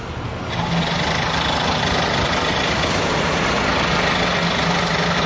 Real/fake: real